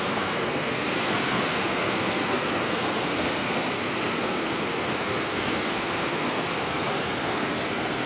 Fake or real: fake